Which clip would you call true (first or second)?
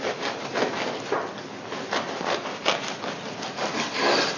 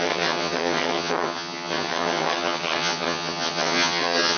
first